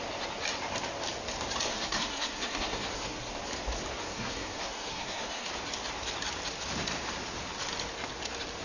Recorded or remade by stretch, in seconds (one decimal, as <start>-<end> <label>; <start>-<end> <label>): 0.0-1.7 recorded; 1.7-3.3 remade; 3.3-4.0 recorded; 4.0-5.5 remade; 5.5-8.6 recorded